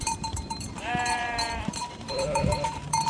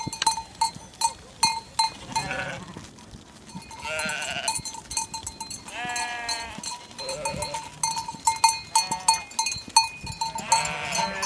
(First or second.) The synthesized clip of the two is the first